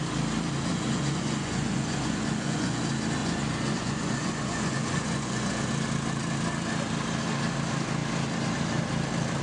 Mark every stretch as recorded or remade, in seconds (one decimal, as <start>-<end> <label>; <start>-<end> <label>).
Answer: 0.0-0.7 recorded; 0.7-2.8 remade; 2.8-3.2 recorded; 3.2-5.7 remade; 5.7-9.4 recorded